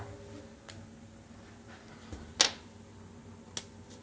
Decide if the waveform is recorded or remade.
recorded